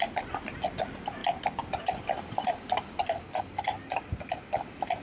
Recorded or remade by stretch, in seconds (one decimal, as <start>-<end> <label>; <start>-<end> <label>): 0.0-1.2 recorded; 1.2-3.4 remade; 3.4-5.0 recorded